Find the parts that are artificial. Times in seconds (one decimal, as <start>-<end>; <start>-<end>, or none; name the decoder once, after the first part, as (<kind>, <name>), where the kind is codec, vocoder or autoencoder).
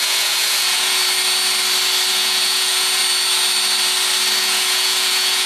0.0-1.0 (vocoder, Vocos); 2.1-3.0; 4.4-5.5